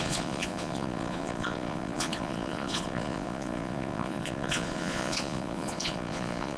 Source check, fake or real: fake